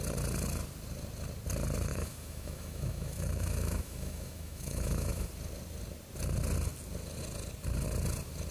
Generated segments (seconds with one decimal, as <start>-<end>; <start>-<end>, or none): 1.9-5.3